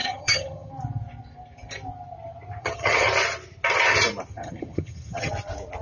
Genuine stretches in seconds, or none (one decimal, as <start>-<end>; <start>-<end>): 0.7-2.6; 3.1-4.3; 5.3-5.8